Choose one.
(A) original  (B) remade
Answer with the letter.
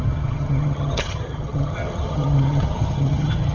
B